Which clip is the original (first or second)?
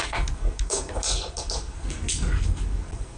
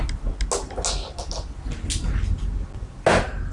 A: second